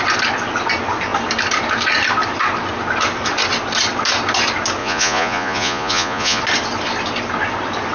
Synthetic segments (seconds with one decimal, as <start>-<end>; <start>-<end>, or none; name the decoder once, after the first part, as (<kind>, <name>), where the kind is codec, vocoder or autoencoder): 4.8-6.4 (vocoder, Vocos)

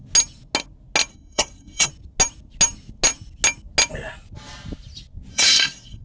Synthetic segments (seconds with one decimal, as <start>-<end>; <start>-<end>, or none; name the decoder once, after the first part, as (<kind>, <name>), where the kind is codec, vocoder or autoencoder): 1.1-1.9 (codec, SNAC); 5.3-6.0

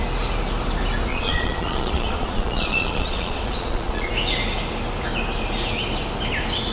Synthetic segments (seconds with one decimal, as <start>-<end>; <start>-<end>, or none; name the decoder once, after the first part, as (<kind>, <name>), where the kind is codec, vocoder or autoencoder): 1.1-4.1 (vocoder, Vocos)